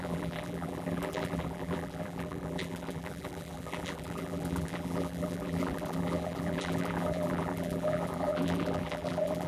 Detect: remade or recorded remade